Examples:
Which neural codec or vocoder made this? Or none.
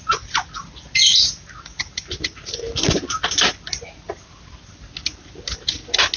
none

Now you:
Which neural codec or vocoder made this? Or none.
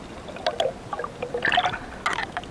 none